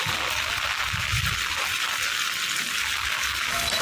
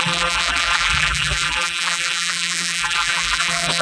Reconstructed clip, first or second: second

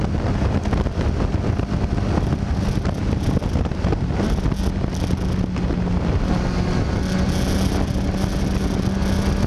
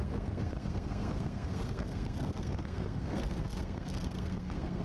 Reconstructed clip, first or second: second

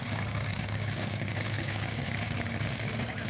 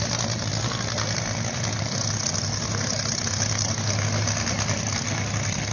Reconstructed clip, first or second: first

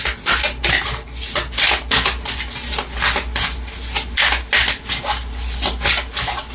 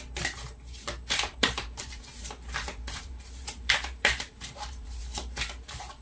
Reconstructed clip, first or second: second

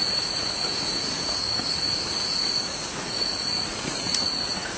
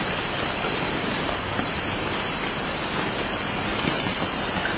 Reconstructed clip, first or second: first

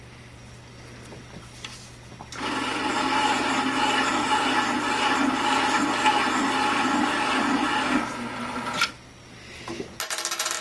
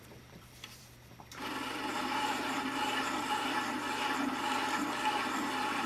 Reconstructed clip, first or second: second